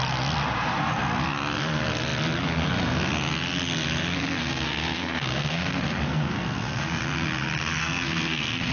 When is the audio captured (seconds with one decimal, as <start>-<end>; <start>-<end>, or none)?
0.0-4.4; 7.0-7.8